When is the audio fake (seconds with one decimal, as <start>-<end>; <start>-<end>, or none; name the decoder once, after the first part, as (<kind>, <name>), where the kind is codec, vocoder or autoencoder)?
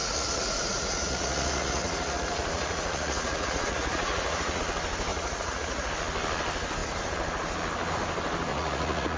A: 0.0-4.6 (vocoder, Vocos); 5.1-5.9; 8.5-9.2